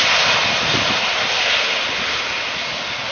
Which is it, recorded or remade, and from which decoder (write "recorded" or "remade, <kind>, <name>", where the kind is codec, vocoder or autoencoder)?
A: recorded